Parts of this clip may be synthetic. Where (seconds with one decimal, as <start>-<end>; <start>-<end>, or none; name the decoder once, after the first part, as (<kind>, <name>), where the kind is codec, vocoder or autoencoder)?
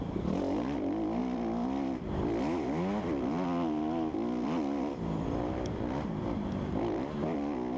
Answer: none